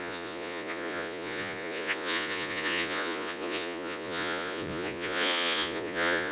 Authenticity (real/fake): fake